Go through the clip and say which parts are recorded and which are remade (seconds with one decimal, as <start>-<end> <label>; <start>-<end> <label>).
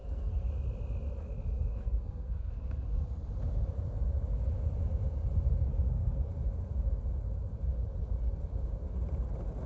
0.0-0.5 remade; 0.5-1.7 recorded; 1.7-2.5 remade; 2.5-5.7 recorded; 5.7-6.3 remade; 6.3-9.7 recorded